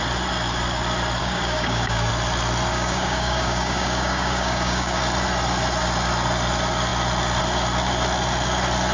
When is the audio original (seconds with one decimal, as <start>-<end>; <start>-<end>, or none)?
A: 0.0-1.2; 2.1-2.7; 5.0-8.9